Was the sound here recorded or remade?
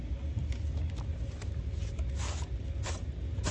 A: recorded